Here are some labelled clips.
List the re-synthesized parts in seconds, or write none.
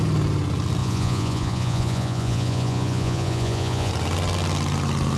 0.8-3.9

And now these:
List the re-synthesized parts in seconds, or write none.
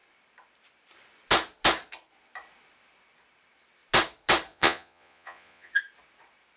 4.5-5.7